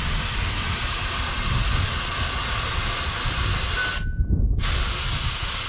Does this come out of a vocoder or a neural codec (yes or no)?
no